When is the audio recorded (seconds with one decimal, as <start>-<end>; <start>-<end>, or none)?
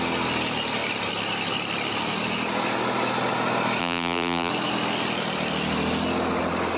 0.0-3.8; 4.5-6.8